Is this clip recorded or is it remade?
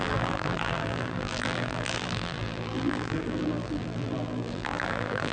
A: remade